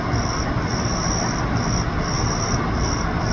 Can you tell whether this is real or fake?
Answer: real